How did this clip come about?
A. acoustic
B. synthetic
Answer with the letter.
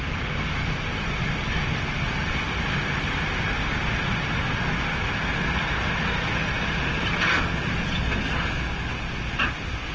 A